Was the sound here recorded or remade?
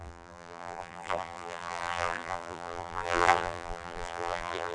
remade